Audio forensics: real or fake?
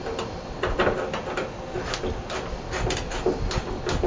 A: real